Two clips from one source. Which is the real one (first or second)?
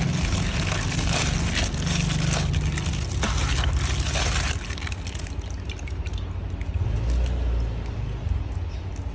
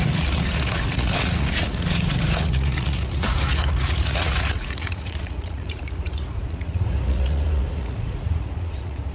first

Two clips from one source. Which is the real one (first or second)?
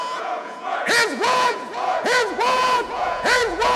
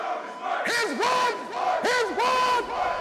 second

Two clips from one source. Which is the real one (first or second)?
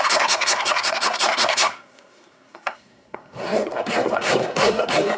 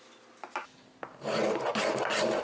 second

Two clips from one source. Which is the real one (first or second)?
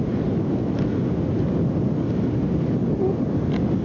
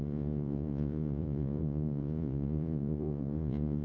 first